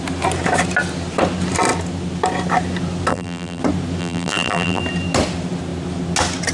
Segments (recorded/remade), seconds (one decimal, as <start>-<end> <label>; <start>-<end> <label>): 0.0-3.1 recorded; 3.1-3.6 remade; 3.6-4.0 recorded; 4.0-4.8 remade; 4.8-6.5 recorded